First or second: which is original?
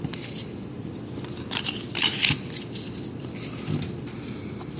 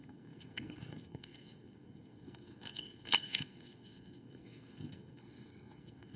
first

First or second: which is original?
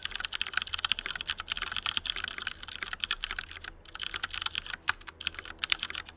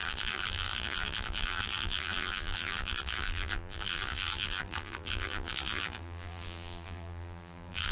first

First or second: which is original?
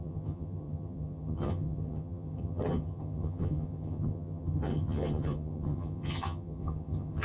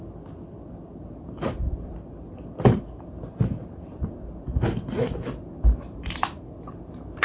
second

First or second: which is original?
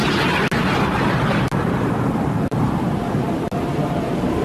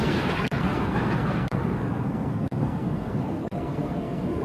first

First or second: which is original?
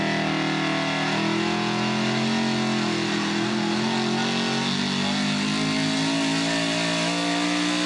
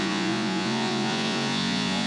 first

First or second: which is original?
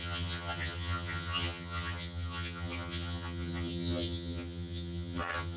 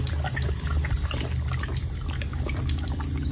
second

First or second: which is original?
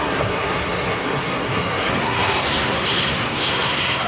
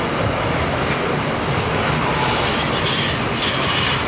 second